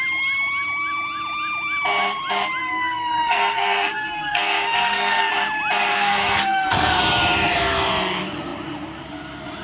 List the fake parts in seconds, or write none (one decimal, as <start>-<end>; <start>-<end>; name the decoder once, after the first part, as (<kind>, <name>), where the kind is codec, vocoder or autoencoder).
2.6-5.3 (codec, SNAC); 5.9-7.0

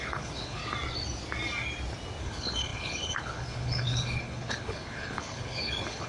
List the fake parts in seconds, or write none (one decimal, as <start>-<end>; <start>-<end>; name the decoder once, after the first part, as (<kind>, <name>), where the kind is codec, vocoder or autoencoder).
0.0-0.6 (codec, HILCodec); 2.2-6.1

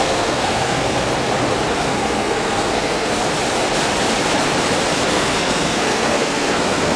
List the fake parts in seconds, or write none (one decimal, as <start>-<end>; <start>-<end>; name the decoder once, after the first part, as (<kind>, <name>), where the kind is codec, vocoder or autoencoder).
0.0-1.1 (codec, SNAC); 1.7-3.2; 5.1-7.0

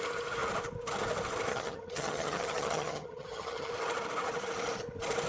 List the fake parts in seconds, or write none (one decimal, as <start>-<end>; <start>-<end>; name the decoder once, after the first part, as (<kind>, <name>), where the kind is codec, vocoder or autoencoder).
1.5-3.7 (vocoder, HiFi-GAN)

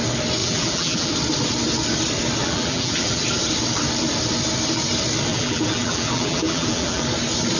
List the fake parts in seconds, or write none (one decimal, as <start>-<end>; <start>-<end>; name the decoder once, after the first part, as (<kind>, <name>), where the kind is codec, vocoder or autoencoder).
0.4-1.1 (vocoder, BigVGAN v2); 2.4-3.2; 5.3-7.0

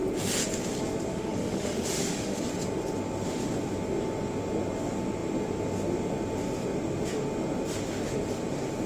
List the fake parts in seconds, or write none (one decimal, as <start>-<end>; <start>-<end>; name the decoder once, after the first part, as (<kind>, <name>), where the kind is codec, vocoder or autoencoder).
1.1-2.4 (autoencoder, DAC-VAE)